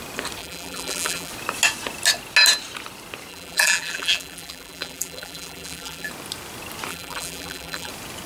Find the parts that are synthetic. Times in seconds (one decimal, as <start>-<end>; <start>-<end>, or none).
0.4-1.3; 3.3-6.1; 6.9-7.9